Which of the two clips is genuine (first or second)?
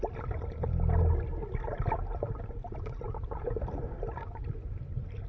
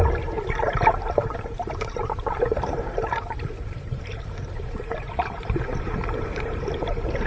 first